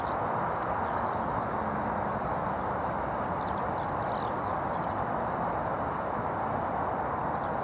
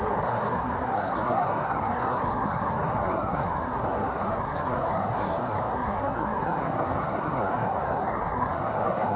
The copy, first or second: second